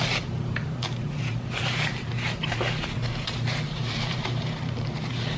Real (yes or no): no